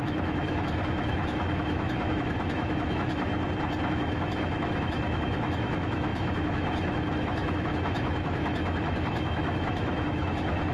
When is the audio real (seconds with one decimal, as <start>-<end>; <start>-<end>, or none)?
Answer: 3.3-3.9